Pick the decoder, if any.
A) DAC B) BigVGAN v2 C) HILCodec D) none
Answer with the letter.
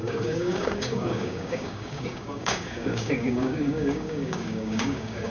A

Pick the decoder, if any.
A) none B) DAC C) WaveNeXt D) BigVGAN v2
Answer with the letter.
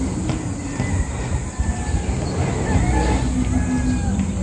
A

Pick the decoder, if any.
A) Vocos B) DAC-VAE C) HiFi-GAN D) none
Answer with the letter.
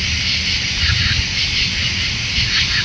D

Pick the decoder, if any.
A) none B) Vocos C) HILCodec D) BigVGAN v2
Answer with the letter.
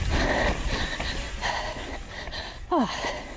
A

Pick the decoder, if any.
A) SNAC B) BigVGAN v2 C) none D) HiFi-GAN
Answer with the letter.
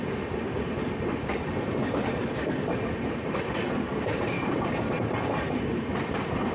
B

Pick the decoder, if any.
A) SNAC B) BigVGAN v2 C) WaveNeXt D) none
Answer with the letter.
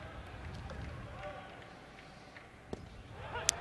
D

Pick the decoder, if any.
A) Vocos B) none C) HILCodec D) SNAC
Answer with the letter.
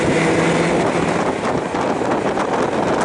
B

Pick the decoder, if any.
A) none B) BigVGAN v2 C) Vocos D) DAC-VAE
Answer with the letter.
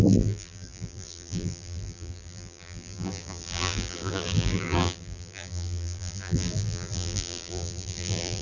B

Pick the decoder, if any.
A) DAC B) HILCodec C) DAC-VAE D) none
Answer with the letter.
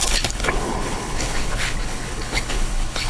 B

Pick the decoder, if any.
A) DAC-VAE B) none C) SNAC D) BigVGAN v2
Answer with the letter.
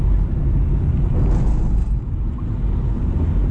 B